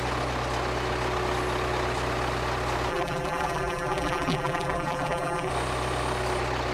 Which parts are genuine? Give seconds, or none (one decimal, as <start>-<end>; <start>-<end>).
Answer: 0.0-2.9; 5.5-6.7